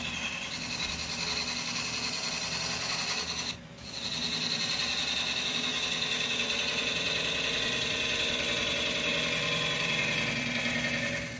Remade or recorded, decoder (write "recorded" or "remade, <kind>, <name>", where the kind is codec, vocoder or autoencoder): recorded